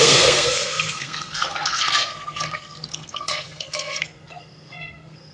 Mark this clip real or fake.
fake